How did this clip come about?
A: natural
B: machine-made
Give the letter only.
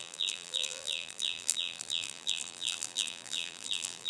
B